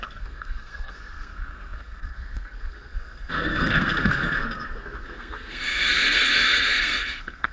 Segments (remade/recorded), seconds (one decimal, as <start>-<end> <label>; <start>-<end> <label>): 0.0-7.5 remade